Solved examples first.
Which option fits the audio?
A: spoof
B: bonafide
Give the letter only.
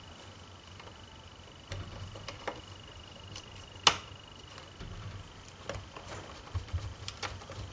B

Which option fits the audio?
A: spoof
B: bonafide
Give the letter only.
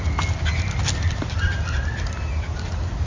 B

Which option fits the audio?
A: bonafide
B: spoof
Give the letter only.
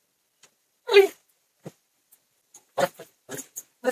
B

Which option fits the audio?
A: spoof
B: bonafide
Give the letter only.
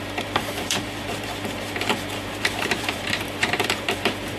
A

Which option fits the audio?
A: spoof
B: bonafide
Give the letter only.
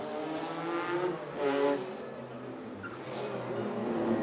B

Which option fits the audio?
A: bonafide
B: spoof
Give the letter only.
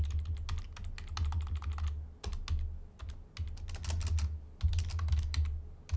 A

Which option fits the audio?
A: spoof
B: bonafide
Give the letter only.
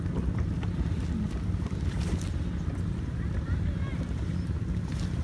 B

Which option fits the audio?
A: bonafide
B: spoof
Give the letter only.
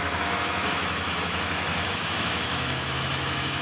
B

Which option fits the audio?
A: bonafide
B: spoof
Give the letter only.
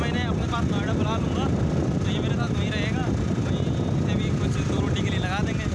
A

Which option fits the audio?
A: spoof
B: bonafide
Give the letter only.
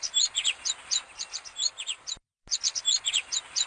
B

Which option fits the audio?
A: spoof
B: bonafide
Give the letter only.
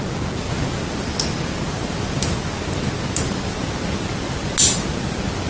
B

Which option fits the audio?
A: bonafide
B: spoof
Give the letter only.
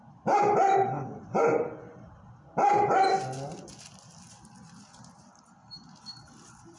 A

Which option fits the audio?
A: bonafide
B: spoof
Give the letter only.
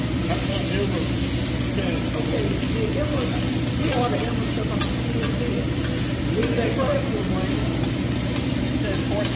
A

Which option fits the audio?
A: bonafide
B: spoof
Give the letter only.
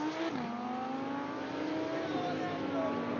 A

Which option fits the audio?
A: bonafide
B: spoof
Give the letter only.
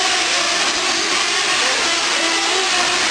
A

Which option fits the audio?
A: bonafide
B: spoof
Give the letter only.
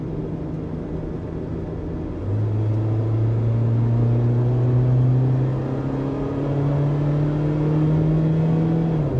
A